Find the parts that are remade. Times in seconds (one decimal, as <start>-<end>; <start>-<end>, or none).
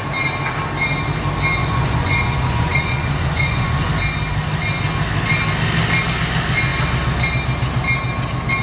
1.6-3.9